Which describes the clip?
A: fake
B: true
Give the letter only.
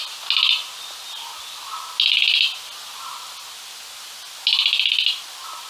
B